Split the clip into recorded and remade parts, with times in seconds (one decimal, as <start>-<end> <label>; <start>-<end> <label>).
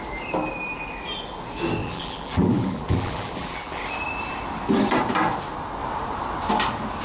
0.0-1.8 recorded; 1.8-3.8 remade; 3.8-7.0 recorded